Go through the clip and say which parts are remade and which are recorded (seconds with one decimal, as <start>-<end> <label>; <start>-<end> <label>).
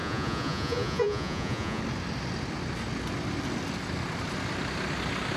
0.0-1.8 remade; 1.8-5.4 recorded